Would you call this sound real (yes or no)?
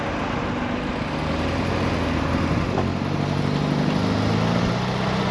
yes